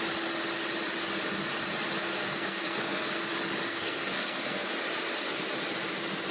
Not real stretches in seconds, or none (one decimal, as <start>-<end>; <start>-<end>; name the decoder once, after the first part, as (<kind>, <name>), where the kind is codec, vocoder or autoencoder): 2.2-3.2 (codec, SNAC); 3.7-4.7